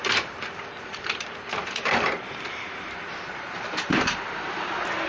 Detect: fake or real fake